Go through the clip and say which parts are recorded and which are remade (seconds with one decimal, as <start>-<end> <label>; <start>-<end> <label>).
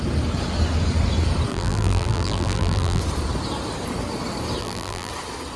0.0-1.5 recorded; 1.5-3.0 remade; 3.0-4.6 recorded; 4.6-5.1 remade; 5.1-5.6 recorded